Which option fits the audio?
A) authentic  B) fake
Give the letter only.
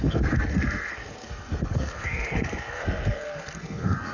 B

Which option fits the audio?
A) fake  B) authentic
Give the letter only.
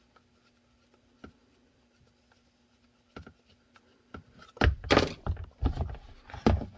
B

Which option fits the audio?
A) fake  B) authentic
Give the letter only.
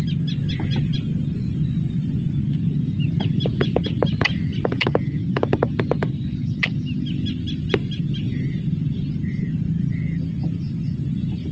B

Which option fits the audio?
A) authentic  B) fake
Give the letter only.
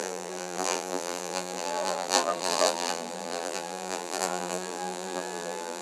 B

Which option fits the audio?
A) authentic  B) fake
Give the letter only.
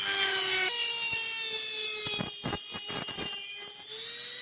A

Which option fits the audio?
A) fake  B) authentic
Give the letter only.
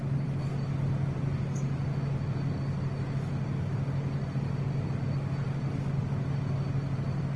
B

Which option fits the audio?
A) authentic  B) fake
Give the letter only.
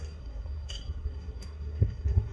B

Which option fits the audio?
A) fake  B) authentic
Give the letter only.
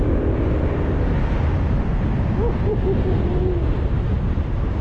B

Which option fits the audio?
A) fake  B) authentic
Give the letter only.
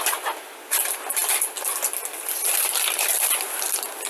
B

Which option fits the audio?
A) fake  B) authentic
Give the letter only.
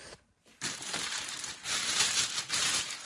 A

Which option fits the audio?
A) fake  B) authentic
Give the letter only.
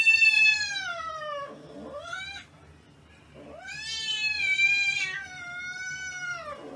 B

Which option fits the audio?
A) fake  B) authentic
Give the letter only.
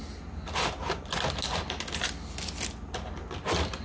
B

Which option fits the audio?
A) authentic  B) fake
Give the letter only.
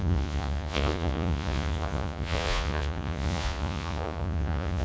B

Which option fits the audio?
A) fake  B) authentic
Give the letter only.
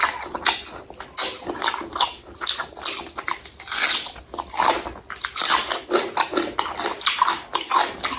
B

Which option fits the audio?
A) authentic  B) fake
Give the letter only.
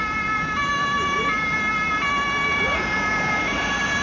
A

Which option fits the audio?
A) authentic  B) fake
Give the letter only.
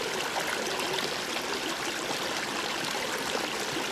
A